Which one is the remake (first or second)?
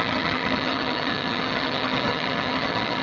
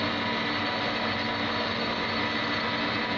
first